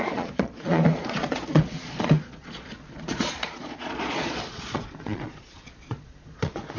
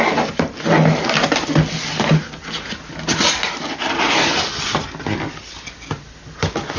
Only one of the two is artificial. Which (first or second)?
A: first